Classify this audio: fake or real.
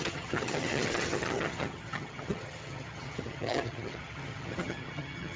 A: fake